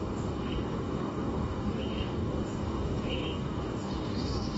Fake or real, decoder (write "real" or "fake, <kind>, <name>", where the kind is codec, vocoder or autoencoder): fake, codec, DAC